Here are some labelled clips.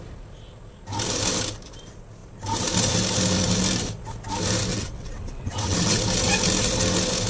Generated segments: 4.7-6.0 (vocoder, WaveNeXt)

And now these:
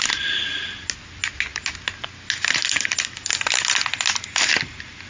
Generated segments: none

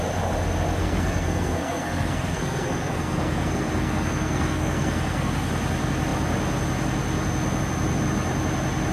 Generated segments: 0.8-5.5 (codec, SNAC)

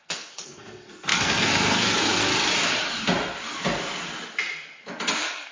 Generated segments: 0.0-2.3 (codec, SNAC); 5.1-5.5

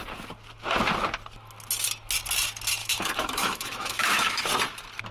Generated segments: 2.8-4.5 (autoencoder, DAC-VAE)

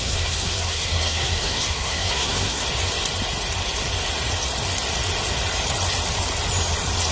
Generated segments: 0.0-2.6 (codec, SNAC)

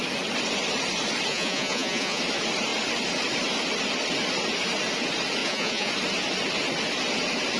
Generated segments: 1.3-2.2 (vocoder, Vocos); 5.4-5.9